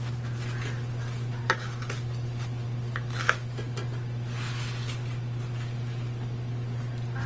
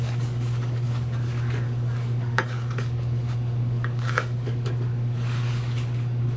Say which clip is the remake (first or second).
second